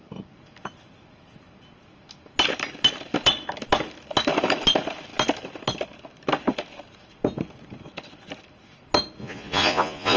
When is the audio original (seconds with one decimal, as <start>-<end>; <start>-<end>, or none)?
0.0-9.2